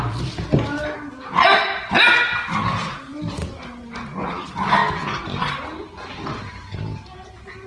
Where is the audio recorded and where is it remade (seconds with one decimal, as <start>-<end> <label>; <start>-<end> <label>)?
0.0-7.7 recorded